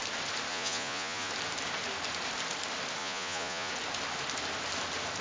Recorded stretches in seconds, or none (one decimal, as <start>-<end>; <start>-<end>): 0.0-0.5; 1.3-3.0; 3.7-5.2